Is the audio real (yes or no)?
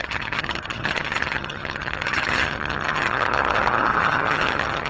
no